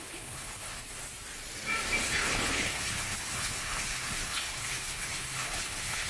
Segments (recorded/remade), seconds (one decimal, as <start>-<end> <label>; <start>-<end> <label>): 0.0-1.0 remade; 1.0-2.0 recorded; 2.0-6.1 remade